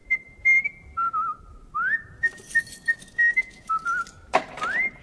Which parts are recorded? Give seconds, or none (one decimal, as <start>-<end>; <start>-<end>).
0.0-3.0; 3.8-5.0